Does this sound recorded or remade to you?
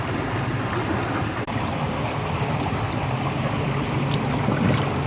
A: recorded